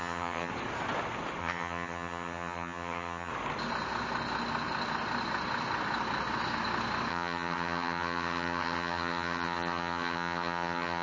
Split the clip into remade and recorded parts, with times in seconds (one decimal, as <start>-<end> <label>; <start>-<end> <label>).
0.0-0.5 remade; 0.5-1.4 recorded; 1.4-3.3 remade; 3.3-7.1 recorded; 7.1-11.0 remade